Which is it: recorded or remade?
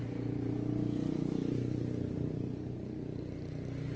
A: recorded